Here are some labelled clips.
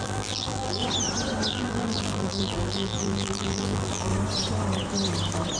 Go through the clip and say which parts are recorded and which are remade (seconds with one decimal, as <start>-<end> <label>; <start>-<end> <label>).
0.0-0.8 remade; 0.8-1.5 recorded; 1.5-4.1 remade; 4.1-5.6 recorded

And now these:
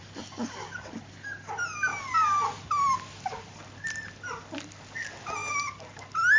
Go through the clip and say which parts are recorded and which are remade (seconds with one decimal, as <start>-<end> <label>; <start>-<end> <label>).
0.0-6.4 recorded

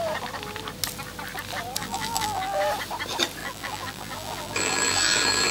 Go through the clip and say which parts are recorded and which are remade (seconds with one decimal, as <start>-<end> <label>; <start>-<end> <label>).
0.0-1.8 recorded; 1.8-2.6 remade; 2.6-3.4 recorded; 3.4-5.5 remade

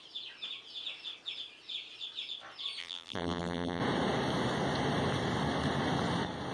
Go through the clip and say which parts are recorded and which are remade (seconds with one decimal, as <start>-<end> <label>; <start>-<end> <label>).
0.0-2.8 recorded; 2.8-3.8 remade; 3.8-6.5 recorded

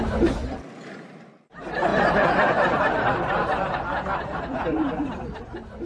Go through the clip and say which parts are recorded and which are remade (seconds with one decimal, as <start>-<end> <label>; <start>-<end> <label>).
0.0-1.9 recorded; 1.9-5.4 remade; 5.4-5.9 recorded